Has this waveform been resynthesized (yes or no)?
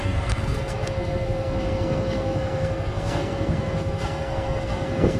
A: yes